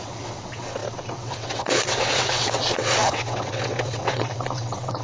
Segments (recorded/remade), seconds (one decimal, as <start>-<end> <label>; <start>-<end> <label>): 0.0-5.0 remade